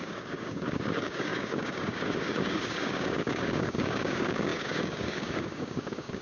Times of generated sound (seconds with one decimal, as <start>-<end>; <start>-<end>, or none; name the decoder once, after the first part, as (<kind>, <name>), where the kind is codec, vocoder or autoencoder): 0.0-6.2 (codec, DAC)